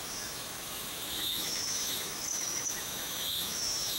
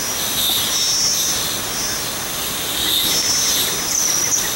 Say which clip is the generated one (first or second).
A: first